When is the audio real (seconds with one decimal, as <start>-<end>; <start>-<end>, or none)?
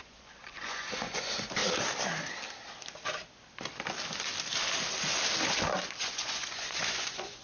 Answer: 1.6-6.0